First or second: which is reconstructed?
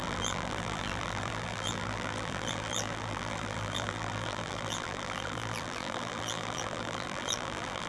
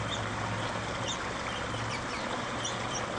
first